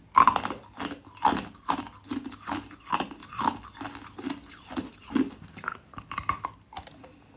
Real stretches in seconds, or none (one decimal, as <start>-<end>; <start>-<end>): 0.0-7.4